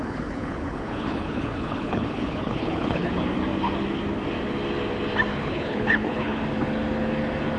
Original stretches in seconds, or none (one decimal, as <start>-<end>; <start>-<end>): 3.1-5.3; 6.4-7.6